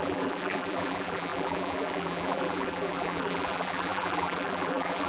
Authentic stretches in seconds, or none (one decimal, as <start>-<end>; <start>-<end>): none